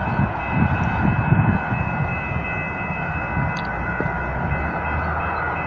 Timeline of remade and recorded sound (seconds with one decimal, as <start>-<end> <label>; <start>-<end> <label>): 0.0-5.7 recorded